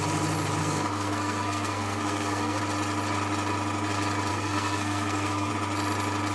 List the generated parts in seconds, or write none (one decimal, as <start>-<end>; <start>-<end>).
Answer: 0.6-2.6; 4.3-5.5

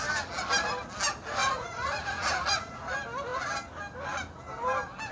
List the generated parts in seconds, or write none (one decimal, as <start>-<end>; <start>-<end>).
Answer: 1.4-2.9

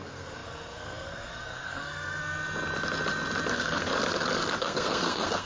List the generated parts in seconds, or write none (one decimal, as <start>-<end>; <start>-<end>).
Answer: 0.0-2.2; 3.5-3.9; 4.6-5.5

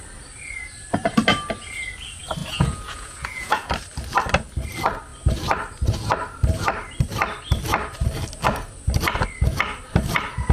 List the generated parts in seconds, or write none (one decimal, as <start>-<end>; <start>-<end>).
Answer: 2.4-3.7

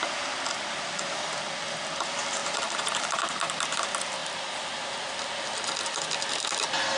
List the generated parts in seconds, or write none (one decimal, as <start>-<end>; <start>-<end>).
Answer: 2.4-3.7; 4.2-4.7

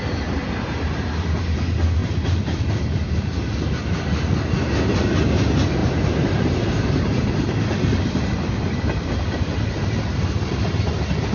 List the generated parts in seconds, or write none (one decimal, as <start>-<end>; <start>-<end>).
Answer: 2.0-3.2; 5.8-9.4

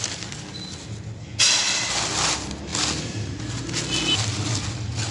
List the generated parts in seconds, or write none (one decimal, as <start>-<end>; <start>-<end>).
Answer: none